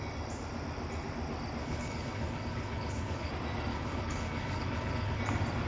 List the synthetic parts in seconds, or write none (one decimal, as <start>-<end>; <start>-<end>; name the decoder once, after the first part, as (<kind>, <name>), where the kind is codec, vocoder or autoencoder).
1.6-3.3 (codec, HILCodec); 3.7-5.2